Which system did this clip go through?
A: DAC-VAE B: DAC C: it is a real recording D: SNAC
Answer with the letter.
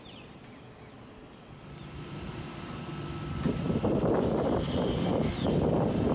C